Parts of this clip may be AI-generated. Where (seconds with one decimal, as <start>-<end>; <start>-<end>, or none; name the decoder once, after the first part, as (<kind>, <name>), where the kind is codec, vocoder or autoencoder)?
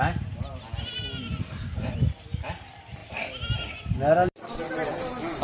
none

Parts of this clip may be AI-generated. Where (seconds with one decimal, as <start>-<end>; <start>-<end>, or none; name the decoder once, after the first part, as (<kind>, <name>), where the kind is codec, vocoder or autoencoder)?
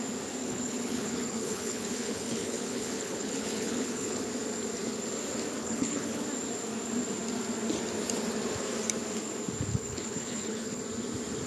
0.4-4.2 (codec, HILCodec); 5.6-6.2; 9.7-10.8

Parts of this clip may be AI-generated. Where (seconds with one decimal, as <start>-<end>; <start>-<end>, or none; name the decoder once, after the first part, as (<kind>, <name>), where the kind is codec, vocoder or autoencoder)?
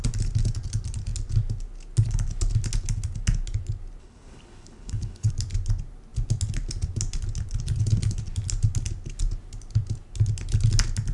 4.0-5.3 (codec, HILCodec)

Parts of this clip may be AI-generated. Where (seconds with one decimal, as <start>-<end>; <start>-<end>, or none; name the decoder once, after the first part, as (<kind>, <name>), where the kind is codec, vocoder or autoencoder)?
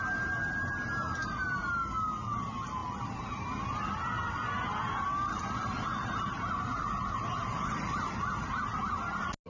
none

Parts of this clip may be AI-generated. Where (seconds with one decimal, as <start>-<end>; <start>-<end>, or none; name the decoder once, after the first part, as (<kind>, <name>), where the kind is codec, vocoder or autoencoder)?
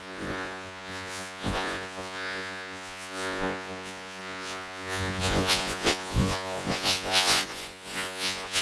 0.0-8.6 (vocoder, Vocos)